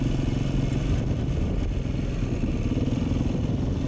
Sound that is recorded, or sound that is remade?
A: recorded